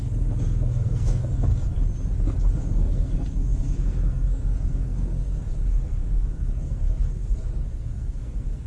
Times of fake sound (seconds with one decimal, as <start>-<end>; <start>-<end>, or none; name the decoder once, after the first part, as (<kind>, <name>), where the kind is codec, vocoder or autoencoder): 0.0-1.5 (codec, SNAC); 2.6-8.7